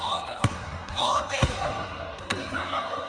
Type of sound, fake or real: fake